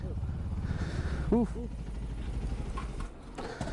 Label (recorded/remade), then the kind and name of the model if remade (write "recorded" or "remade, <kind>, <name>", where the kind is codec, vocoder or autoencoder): recorded